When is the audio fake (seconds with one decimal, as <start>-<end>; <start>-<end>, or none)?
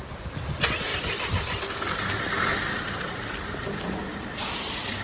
none